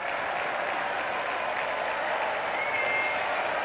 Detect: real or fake real